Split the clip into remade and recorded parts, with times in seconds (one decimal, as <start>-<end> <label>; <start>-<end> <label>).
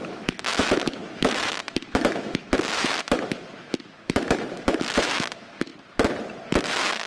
0.0-5.7 remade; 5.7-6.6 recorded; 6.6-7.1 remade